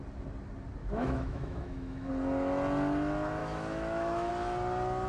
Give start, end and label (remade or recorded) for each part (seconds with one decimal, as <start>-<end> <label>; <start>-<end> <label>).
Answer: 0.0-0.8 recorded; 0.8-2.1 remade; 2.1-3.4 recorded; 3.4-4.3 remade; 4.3-5.1 recorded